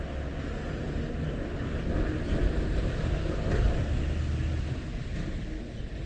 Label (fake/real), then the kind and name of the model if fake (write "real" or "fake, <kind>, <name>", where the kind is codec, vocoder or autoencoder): real